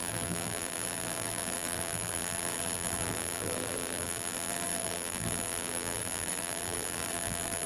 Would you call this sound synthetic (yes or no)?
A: yes